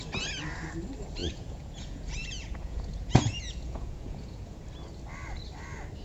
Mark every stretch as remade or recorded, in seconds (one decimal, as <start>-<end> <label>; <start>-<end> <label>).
0.0-1.2 recorded; 1.2-4.6 remade; 4.6-6.0 recorded